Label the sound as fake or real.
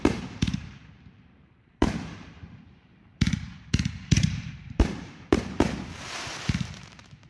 fake